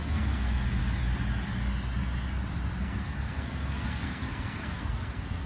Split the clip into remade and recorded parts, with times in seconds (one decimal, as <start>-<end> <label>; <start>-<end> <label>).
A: 0.0-0.8 remade; 0.8-2.8 recorded; 2.8-5.5 remade